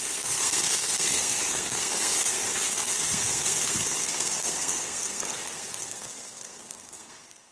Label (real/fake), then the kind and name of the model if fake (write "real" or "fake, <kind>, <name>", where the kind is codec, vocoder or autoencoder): fake, codec, SNAC